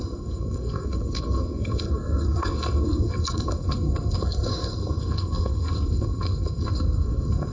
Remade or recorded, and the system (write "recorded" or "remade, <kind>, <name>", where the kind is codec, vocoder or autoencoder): remade, codec, SNAC